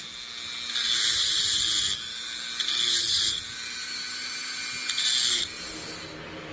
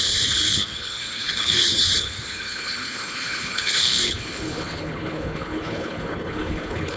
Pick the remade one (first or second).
second